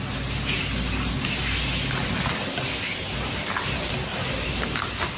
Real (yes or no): yes